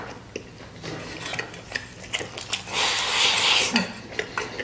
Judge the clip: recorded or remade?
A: recorded